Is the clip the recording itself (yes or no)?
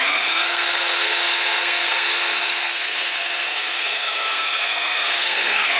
no